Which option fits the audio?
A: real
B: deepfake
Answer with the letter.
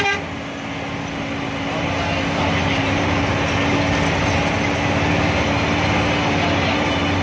A